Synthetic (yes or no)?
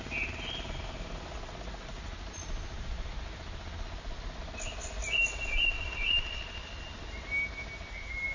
no